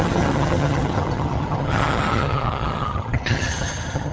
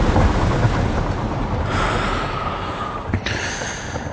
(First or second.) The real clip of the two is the second